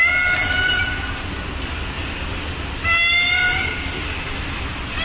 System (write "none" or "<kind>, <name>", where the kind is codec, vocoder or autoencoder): none